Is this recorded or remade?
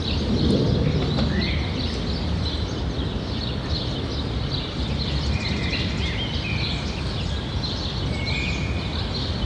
recorded